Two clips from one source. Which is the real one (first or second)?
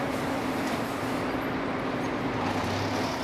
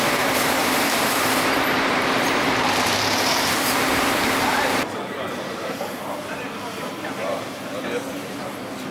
first